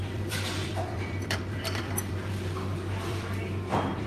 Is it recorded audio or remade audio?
remade